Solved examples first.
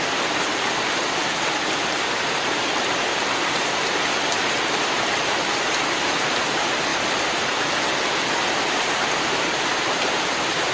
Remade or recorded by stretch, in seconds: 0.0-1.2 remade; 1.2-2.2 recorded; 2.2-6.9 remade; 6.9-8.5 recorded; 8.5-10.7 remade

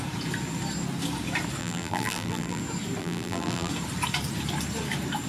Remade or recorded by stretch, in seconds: 0.0-1.6 recorded; 1.6-2.6 remade; 2.6-3.0 recorded; 3.0-3.7 remade; 3.7-5.3 recorded

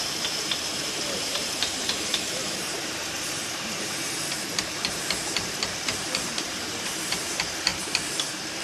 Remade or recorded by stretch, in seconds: 0.0-8.6 remade

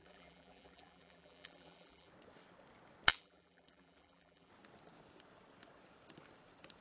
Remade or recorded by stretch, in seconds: 0.0-2.1 remade; 2.1-3.1 recorded; 3.1-4.5 remade; 4.5-6.8 recorded